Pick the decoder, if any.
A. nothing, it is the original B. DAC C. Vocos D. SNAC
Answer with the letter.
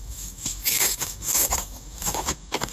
B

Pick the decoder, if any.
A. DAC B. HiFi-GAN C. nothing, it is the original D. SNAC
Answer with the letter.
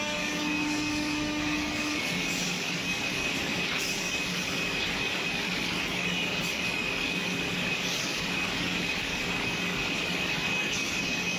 A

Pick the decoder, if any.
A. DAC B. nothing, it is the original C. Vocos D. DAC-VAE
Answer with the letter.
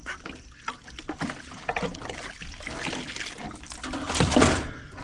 B